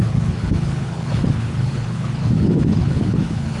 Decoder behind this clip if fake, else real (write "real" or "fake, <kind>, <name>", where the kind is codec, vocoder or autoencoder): fake, codec, HILCodec